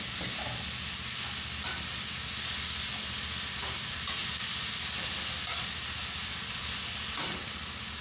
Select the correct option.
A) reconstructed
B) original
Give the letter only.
B